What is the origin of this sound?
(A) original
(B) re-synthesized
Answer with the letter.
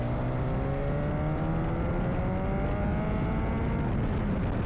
A